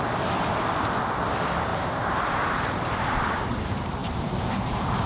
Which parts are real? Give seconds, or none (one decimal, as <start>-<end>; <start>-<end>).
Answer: 0.0-1.7; 3.3-4.0